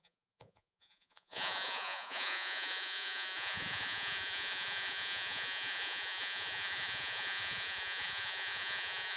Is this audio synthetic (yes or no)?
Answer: yes